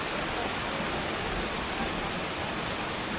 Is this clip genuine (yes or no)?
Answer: yes